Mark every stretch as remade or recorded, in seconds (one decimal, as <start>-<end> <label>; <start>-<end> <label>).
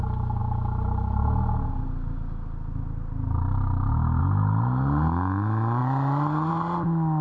0.0-7.2 recorded